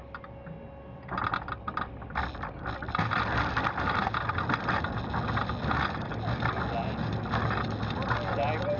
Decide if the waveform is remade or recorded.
recorded